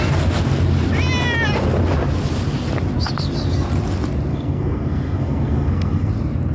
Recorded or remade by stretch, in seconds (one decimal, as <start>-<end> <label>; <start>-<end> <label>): 0.0-4.3 recorded; 4.3-6.1 remade; 6.1-6.5 recorded